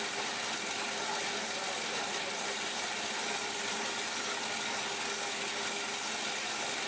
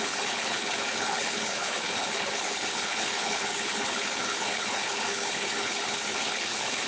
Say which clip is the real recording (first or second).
first